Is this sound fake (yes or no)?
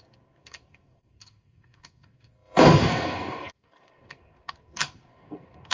yes